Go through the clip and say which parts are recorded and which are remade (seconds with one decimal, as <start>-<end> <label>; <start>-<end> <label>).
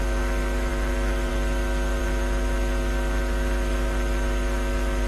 0.0-5.1 recorded